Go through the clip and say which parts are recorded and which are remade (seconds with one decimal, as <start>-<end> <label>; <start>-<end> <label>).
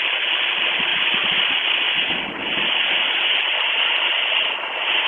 0.0-5.1 recorded